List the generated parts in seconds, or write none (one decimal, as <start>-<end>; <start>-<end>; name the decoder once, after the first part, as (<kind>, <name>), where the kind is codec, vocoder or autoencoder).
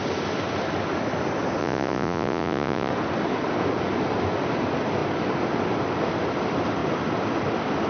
1.6-2.9 (vocoder, Vocos)